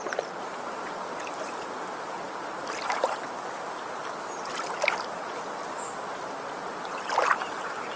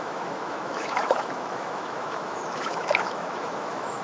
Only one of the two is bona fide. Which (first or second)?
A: first